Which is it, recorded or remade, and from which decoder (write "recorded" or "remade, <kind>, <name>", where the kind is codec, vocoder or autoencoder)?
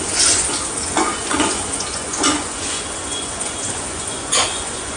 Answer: remade, vocoder, Vocos